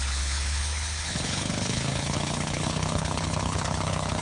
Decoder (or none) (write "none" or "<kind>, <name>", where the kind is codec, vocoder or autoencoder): codec, HILCodec